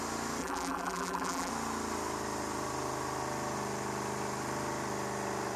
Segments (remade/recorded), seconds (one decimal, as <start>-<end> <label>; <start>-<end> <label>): 0.0-0.4 recorded; 0.4-1.5 remade; 1.5-5.6 recorded